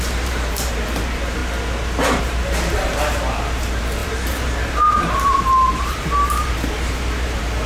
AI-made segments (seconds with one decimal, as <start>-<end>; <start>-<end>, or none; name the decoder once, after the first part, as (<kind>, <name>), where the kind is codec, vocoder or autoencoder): 0.0-1.4 (vocoder, BigVGAN v2); 2.2-7.7